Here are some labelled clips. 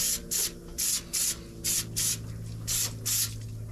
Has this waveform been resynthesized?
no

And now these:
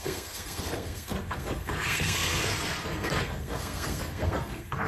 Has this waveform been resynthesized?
yes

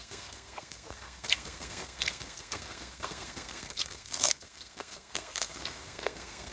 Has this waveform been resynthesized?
yes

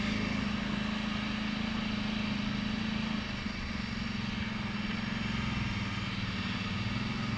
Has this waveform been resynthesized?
no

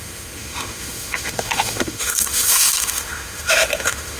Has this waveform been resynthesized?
yes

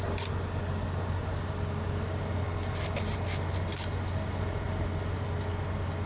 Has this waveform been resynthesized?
no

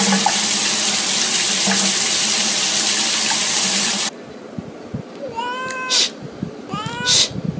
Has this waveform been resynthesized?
no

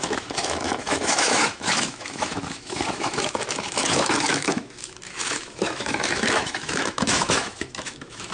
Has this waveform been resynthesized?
yes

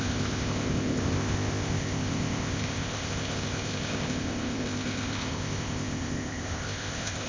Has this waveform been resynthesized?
yes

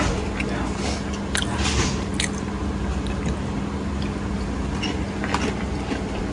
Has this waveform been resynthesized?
no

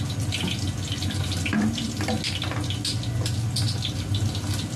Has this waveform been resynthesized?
no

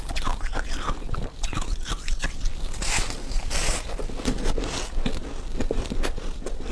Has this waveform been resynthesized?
no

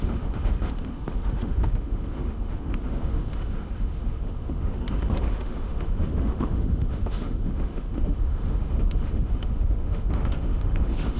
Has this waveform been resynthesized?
yes